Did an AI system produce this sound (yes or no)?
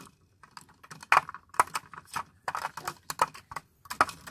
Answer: no